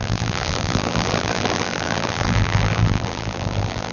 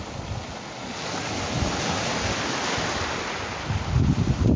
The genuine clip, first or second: second